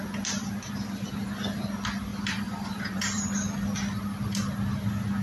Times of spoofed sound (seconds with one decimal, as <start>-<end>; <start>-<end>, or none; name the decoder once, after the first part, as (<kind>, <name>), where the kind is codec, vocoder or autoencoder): 2.1-3.2 (vocoder, BigVGAN v2)